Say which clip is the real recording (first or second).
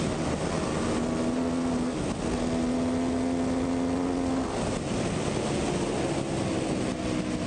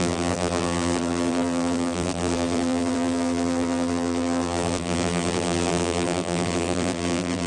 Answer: first